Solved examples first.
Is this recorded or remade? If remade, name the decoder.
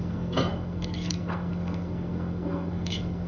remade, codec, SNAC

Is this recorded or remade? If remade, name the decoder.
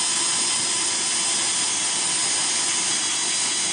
recorded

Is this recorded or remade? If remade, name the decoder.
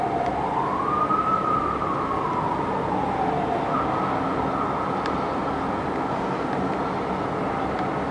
recorded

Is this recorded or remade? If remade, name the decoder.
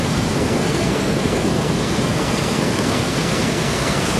remade, codec, SNAC